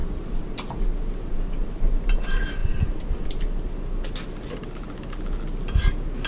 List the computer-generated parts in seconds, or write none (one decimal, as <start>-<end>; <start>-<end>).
none